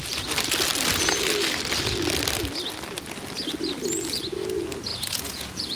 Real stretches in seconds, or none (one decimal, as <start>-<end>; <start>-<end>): 0.0-4.9